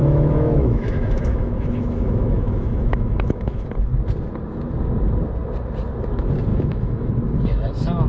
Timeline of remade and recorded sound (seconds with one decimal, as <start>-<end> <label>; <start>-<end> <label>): 0.0-3.7 remade; 3.7-6.5 recorded; 6.5-7.1 remade; 7.1-8.1 recorded

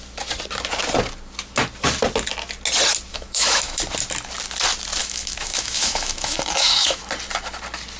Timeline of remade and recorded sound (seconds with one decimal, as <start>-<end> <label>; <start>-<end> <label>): 0.0-3.1 recorded; 3.1-3.8 remade; 3.8-5.0 recorded; 5.0-7.0 remade; 7.0-8.0 recorded

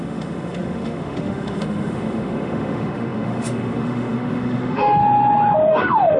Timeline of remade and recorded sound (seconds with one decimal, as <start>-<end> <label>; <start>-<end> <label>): 0.0-5.0 remade; 5.0-5.7 recorded; 5.7-6.2 remade

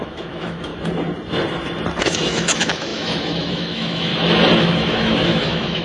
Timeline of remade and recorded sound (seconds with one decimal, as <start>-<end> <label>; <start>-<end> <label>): 0.0-0.7 remade; 0.7-2.0 recorded; 2.0-4.1 remade; 4.1-4.6 recorded; 4.6-5.8 remade

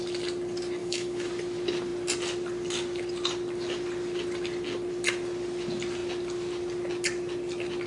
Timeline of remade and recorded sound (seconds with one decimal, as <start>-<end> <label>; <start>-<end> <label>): 0.0-0.8 recorded; 0.8-1.3 remade; 1.3-7.9 recorded

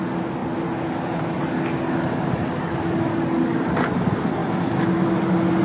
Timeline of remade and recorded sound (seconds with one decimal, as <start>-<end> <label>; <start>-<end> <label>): 0.0-5.6 recorded

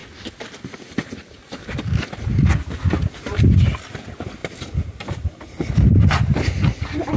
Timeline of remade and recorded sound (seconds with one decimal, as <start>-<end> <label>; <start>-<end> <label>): 0.0-7.2 recorded